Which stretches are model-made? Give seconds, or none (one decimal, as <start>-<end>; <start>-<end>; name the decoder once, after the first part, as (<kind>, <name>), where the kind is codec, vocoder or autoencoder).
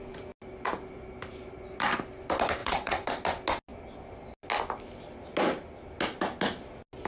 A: 2.6-3.1 (vocoder, WaveNeXt)